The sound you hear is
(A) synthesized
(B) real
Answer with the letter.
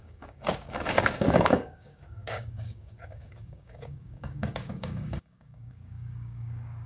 A